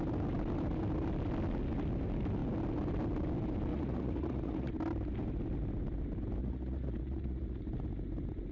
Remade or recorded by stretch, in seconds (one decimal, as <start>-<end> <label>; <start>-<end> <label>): 0.0-3.7 recorded; 3.7-4.7 remade; 4.7-6.4 recorded; 6.4-7.6 remade; 7.6-8.5 recorded